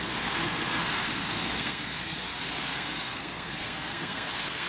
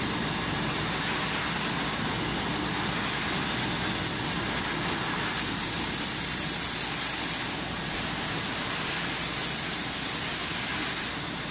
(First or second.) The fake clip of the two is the first